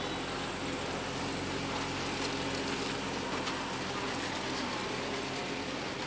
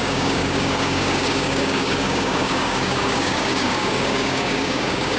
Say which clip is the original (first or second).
first